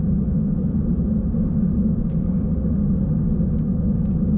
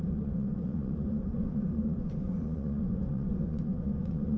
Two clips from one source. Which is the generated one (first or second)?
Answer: second